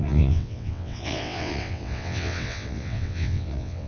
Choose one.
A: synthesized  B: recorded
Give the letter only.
A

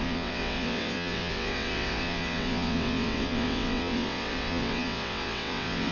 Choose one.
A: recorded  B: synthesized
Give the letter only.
B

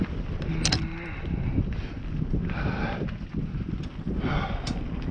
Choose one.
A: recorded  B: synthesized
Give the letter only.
A